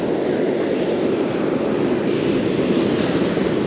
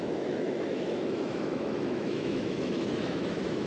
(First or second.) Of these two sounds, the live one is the first